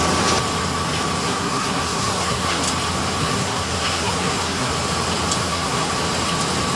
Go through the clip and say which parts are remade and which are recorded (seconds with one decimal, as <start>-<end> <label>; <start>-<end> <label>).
0.0-1.2 recorded; 1.2-2.6 remade; 2.6-3.2 recorded; 3.2-4.7 remade; 4.7-5.4 recorded; 5.4-5.9 remade; 5.9-6.8 recorded